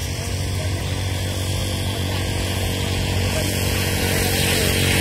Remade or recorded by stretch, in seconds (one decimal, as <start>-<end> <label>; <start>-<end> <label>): 0.0-1.6 recorded; 1.6-4.0 remade; 4.0-5.0 recorded